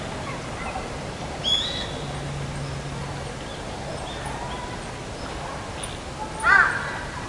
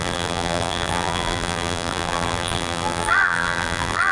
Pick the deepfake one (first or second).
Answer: second